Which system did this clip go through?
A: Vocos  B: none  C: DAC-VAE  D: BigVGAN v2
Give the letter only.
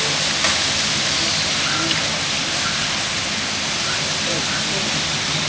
B